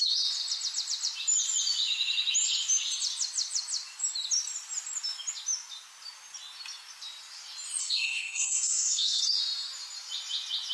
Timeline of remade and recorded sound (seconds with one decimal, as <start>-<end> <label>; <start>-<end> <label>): 0.0-7.8 recorded; 7.8-9.2 remade; 9.2-10.7 recorded